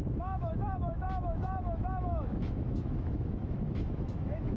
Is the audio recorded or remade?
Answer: remade